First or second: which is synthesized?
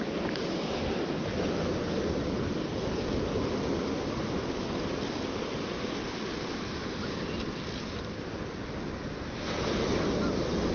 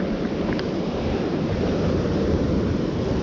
second